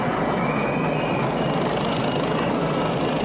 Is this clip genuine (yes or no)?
yes